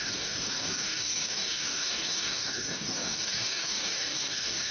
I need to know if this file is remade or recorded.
remade